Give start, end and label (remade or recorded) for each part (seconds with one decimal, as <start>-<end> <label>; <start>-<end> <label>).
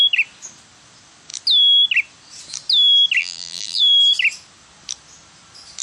0.0-3.2 recorded; 3.2-3.8 remade; 3.8-5.8 recorded